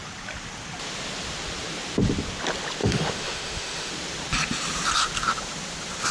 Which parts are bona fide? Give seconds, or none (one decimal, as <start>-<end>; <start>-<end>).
0.0-2.8; 3.9-6.1